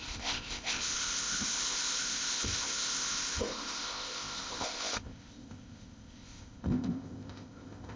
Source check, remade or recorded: remade